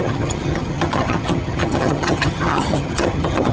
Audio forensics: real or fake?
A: fake